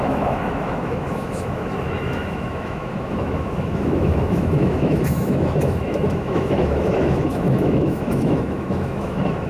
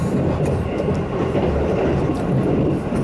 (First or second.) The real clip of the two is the second